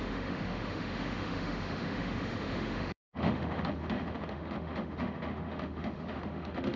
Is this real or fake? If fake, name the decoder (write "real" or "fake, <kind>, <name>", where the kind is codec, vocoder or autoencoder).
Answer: fake, autoencoder, DAC-VAE